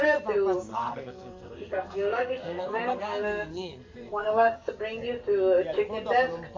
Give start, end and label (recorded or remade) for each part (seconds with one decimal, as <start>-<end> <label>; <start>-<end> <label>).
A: 0.0-0.7 recorded; 0.7-4.7 remade; 4.7-6.6 recorded